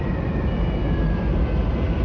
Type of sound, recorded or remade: recorded